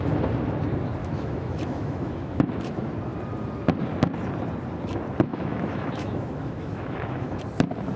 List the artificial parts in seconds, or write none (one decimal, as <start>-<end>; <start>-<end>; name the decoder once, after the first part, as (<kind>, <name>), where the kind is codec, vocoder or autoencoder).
1.0-2.5 (autoencoder, DAC-VAE); 5.3-7.4